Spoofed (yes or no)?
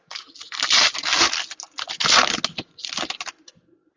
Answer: no